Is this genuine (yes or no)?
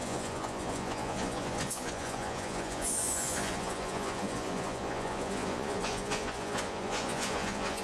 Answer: no